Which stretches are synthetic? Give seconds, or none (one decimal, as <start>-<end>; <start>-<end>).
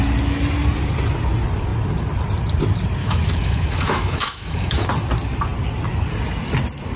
3.0-4.9